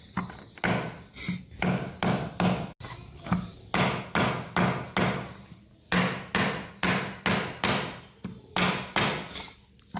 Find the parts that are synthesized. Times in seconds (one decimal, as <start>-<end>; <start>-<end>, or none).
none